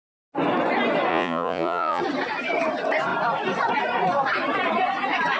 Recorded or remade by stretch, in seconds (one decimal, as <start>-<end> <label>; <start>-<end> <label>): 0.0-1.1 recorded; 1.1-2.0 remade; 2.0-5.4 recorded